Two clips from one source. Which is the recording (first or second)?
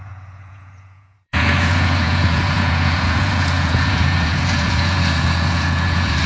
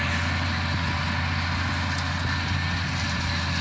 second